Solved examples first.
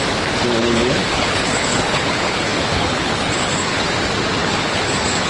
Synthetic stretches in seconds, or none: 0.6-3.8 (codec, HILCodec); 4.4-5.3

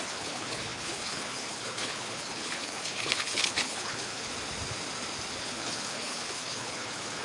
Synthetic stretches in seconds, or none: 0.0-4.3 (codec, HILCodec); 5.3-7.2

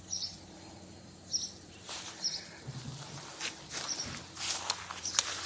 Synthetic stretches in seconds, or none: none

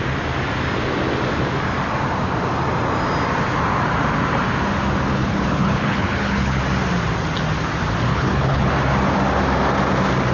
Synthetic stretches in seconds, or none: 5.1-6.6 (codec, HILCodec); 8.1-8.7

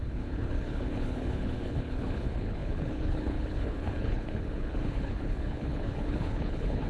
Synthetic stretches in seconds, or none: 0.0-6.9 (codec, HILCodec)

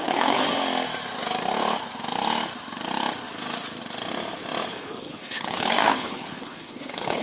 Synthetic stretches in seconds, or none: 0.0-0.4 (codec, HILCodec); 4.7-7.2

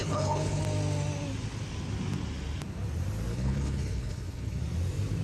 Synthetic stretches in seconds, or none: 0.0-0.6 (codec, HILCodec); 3.3-4.6